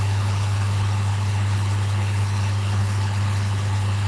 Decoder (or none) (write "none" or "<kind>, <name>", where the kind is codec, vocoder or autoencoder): codec, HILCodec